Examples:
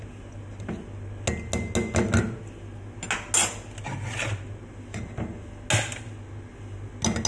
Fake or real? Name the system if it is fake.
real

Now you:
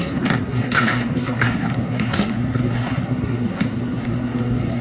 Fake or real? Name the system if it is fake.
fake, codec, SNAC